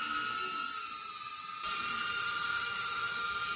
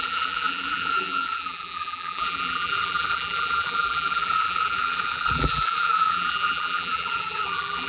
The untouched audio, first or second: first